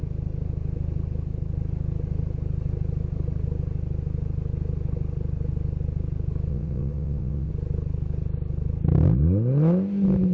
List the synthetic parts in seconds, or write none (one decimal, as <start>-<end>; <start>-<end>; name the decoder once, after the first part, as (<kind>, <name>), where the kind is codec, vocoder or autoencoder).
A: 6.5-7.5 (vocoder, WaveNeXt)